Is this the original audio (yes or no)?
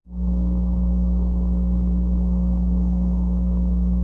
no